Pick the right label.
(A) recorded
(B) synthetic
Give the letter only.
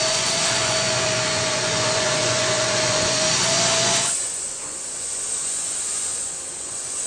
B